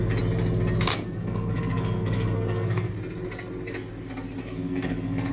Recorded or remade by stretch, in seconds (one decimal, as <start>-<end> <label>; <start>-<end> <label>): 0.0-0.9 recorded; 0.9-2.9 remade; 2.9-4.4 recorded; 4.4-5.3 remade